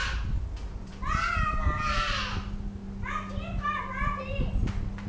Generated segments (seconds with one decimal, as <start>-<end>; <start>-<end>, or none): none